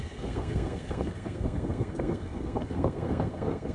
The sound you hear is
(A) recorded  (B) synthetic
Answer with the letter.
B